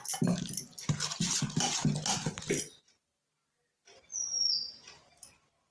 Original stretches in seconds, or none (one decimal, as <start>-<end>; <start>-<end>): 0.0-5.7